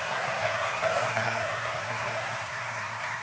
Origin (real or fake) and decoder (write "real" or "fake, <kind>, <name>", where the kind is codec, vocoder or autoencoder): fake, codec, SNAC